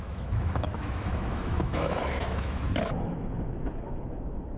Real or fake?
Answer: fake